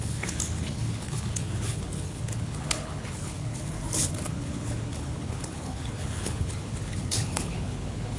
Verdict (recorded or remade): remade